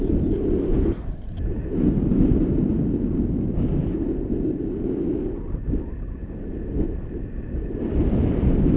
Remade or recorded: recorded